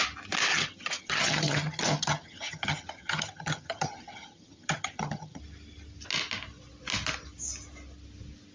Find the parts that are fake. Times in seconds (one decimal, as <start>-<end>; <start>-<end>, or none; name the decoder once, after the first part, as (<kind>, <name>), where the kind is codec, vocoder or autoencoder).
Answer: 0.5-5.4 (vocoder, HiFi-GAN)

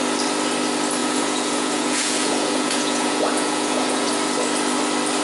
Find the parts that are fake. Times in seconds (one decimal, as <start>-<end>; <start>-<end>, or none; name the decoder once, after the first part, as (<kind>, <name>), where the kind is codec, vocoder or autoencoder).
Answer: 1.0-4.1 (vocoder, Vocos)

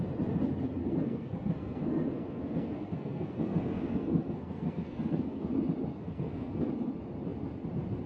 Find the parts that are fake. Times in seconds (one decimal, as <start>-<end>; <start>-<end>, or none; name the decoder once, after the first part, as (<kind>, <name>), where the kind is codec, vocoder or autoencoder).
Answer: 0.8-5.5 (codec, SNAC); 5.9-6.7

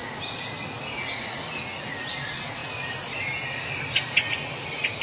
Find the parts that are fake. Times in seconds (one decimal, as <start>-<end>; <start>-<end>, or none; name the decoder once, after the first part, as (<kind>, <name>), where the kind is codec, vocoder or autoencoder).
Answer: none

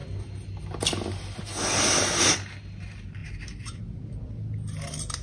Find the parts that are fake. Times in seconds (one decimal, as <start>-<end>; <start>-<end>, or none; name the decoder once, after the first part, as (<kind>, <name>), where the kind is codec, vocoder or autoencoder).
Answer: none

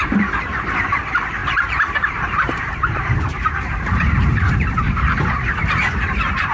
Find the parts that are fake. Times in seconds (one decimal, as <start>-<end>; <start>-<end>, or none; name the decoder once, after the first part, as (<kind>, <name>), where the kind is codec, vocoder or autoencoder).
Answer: 1.4-5.3 (vocoder, BigVGAN v2)

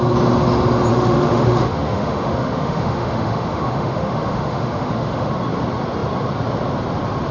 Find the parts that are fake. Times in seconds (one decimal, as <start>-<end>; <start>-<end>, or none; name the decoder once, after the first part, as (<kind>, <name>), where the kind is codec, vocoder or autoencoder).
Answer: 0.9-5.3 (autoencoder, DAC-VAE)

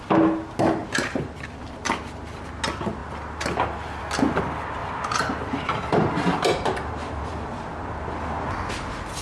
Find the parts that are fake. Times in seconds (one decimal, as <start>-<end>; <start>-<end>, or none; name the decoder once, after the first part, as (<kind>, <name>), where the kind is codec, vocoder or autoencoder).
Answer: 0.8-1.3 (vocoder, BigVGAN v2); 3.0-4.0; 4.8-7.6